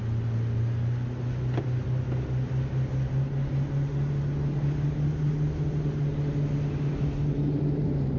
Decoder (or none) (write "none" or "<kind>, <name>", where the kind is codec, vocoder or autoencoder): none